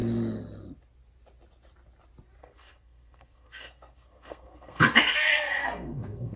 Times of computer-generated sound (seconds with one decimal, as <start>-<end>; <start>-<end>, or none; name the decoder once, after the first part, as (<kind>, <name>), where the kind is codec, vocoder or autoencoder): 2.4-6.4 (codec, SNAC)